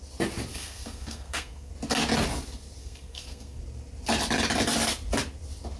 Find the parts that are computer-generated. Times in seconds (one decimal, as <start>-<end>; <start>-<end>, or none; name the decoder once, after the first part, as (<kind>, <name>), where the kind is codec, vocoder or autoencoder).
0.5-1.7 (codec, SNAC); 2.8-3.6